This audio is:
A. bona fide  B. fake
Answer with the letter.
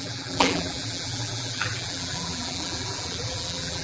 B